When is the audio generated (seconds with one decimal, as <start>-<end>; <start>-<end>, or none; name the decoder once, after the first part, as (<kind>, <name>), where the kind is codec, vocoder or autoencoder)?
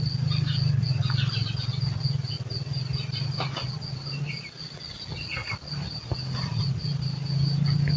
3.9-4.4 (vocoder, BigVGAN v2)